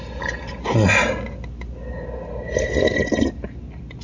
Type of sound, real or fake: real